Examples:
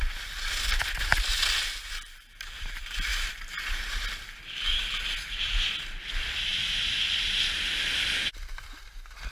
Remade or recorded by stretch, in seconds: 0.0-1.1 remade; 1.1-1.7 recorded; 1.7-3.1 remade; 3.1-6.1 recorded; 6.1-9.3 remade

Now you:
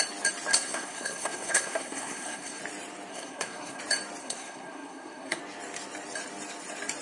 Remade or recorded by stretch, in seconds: 0.0-0.5 recorded; 0.5-2.6 remade; 2.6-3.1 recorded; 3.1-3.8 remade; 3.8-4.2 recorded; 4.2-5.4 remade; 5.4-7.0 recorded

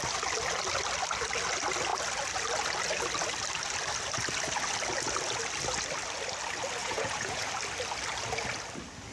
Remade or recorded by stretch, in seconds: 0.0-6.8 recorded; 6.8-7.5 remade; 7.5-9.1 recorded

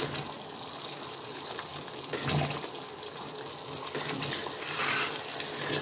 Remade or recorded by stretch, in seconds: 0.0-5.8 recorded

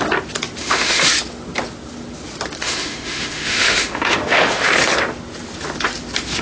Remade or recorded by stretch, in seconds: 0.0-0.6 recorded; 0.6-1.1 remade; 1.1-2.6 recorded; 2.6-4.7 remade; 4.7-6.4 recorded